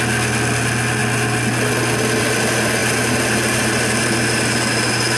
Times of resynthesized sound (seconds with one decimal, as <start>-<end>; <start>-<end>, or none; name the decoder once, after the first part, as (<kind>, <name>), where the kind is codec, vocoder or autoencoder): none